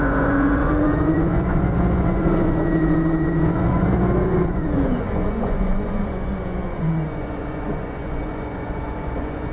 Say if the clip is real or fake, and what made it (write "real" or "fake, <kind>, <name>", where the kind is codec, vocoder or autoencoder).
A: fake, vocoder, Vocos